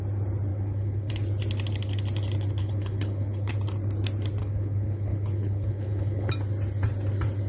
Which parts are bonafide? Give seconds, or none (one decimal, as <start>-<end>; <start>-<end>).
0.0-0.5; 1.1-2.6; 3.5-4.4; 6.3-7.5